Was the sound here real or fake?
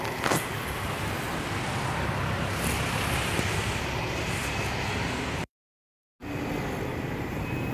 real